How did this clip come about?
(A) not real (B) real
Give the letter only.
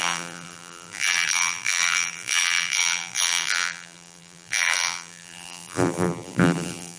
A